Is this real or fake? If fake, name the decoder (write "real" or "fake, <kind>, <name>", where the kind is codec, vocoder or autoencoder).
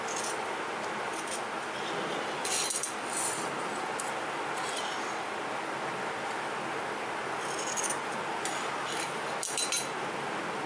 real